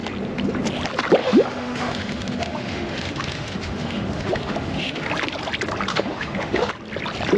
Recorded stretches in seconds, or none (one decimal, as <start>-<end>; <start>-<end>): 0.0-1.2; 5.1-5.9; 6.7-7.4

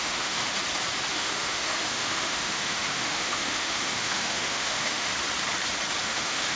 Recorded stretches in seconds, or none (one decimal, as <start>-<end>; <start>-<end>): 0.4-1.1; 5.1-6.0

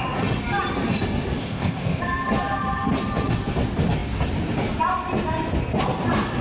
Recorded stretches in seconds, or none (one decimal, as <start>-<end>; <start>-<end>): 0.0-1.4; 2.0-6.4

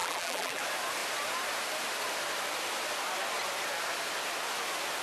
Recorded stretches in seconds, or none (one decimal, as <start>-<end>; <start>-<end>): 0.6-5.0

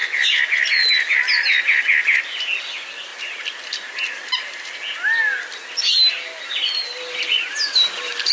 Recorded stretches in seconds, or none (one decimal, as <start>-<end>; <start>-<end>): 0.0-2.6; 3.1-6.5

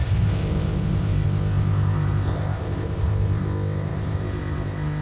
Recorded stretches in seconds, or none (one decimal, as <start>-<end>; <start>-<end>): none

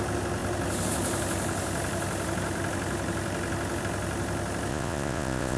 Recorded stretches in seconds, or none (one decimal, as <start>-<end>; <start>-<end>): 0.0-4.7